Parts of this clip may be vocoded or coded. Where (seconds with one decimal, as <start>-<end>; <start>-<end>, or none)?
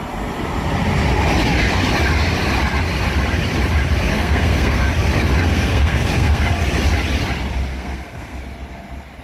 4.1-4.9; 5.4-6.4; 7.7-8.4